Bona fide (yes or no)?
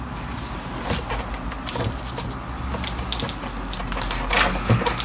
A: yes